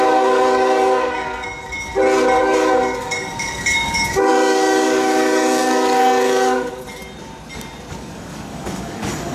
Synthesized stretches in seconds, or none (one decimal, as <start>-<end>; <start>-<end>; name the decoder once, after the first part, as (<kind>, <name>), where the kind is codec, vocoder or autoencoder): 0.0-1.9 (codec, DAC); 2.4-7.0; 7.9-9.3

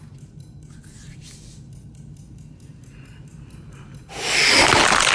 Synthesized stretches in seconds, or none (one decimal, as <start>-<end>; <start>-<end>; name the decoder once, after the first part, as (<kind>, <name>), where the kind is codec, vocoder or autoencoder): none

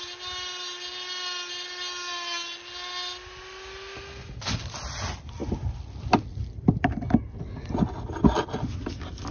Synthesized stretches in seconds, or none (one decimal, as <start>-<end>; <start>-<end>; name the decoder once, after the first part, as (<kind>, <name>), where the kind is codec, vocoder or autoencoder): none

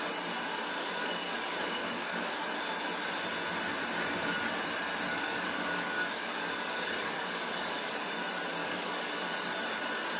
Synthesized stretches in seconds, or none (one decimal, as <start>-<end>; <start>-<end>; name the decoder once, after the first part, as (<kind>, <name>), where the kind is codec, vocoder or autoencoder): 0.7-2.4 (codec, DAC); 5.1-8.0; 8.6-9.1